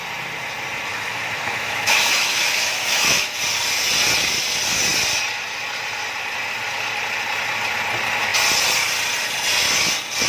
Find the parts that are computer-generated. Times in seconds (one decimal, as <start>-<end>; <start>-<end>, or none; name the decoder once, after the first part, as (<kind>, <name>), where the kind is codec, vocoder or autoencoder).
0.9-3.4 (autoencoder, DAC-VAE)